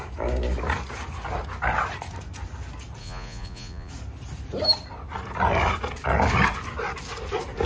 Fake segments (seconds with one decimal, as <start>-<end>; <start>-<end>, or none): 3.0-3.9